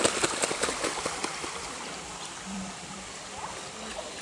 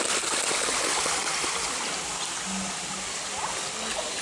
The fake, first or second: first